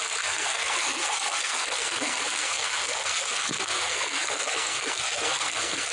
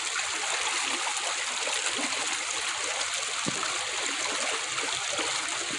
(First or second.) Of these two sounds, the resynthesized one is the first